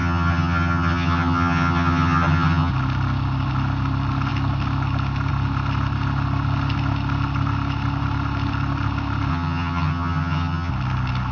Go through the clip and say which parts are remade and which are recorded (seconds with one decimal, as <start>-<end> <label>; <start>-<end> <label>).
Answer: 0.0-2.7 remade; 2.7-9.3 recorded; 9.3-10.7 remade; 10.7-11.3 recorded